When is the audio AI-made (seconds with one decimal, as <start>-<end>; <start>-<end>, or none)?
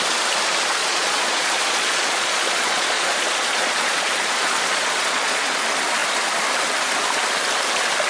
0.8-5.6